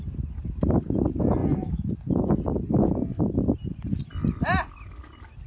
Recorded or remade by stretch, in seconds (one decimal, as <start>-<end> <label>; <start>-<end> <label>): 0.0-5.5 recorded